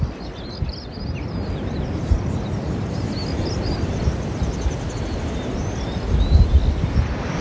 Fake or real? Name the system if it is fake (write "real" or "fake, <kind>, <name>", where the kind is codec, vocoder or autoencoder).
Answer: real